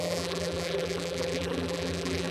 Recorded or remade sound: remade